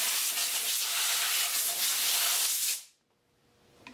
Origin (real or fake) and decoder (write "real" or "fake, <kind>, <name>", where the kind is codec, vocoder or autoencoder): real